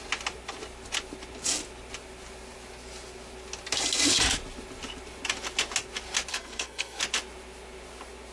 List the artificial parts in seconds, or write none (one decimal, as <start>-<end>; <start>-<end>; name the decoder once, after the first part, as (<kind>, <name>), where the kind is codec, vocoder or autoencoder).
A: 6.3-7.0 (codec, SNAC)